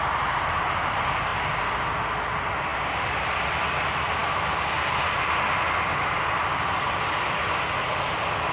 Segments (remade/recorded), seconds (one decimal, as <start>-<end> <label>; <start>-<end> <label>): 0.0-8.5 recorded